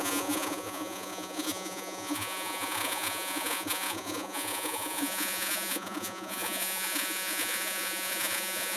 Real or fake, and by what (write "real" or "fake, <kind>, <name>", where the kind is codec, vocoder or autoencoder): fake, vocoder, Vocos